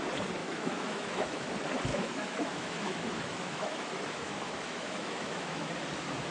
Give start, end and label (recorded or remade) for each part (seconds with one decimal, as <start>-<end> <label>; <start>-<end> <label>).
0.0-0.4 recorded; 0.4-1.5 remade; 1.5-1.9 recorded; 1.9-5.7 remade; 5.7-6.3 recorded